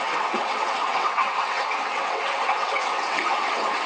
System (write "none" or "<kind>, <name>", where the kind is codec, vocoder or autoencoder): vocoder, WaveNeXt